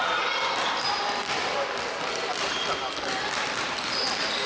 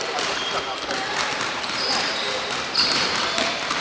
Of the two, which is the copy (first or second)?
second